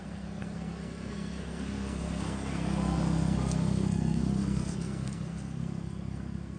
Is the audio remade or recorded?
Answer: remade